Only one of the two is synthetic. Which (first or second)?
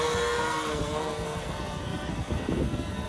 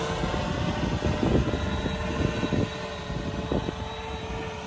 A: first